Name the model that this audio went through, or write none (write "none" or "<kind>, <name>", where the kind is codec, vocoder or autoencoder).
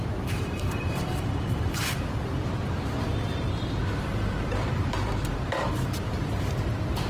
vocoder, BigVGAN v2